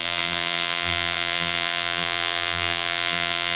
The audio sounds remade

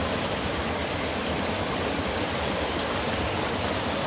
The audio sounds remade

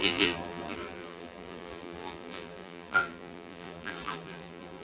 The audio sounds remade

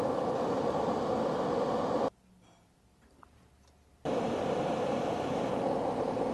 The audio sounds recorded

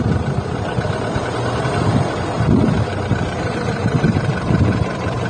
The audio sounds remade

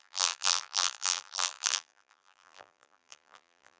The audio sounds remade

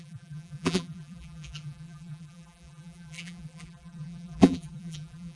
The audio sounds remade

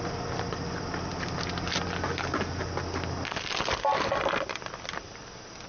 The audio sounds recorded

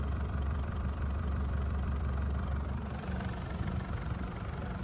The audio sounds remade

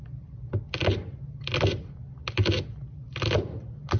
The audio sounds recorded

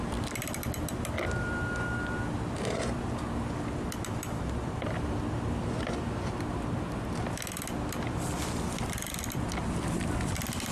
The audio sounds recorded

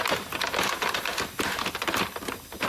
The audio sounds remade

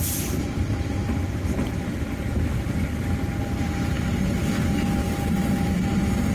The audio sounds recorded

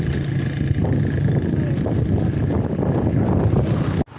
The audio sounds recorded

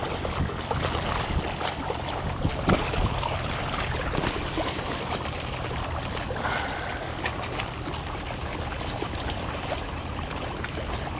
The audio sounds recorded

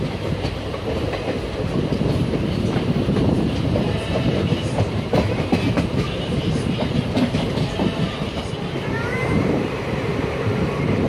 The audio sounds remade